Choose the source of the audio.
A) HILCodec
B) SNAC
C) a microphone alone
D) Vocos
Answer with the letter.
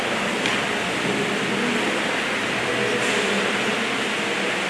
C